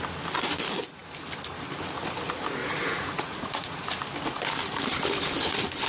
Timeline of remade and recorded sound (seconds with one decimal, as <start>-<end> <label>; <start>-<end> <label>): 0.0-2.6 recorded; 2.6-3.8 remade; 3.8-5.9 recorded